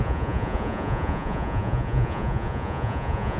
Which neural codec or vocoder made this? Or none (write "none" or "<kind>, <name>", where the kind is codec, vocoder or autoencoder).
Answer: vocoder, Vocos